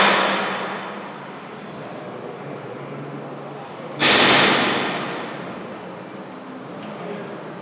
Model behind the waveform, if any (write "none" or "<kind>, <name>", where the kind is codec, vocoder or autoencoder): none